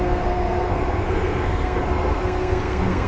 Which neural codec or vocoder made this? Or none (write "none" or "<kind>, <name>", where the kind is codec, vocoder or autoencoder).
codec, SNAC